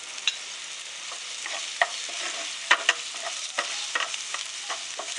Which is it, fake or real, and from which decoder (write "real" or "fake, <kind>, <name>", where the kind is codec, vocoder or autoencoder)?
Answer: real